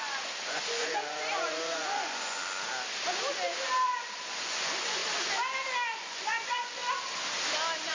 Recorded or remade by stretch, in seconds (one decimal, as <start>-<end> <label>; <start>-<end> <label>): 0.0-2.4 remade; 2.4-4.2 recorded; 4.2-5.0 remade; 5.0-6.0 recorded; 6.0-6.8 remade; 6.8-7.9 recorded